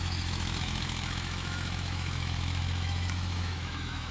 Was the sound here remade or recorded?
remade